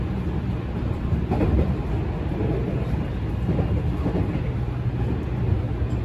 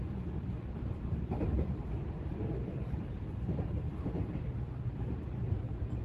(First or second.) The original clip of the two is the first